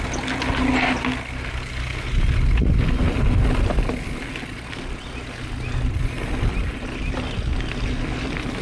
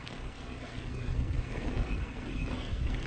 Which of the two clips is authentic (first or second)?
first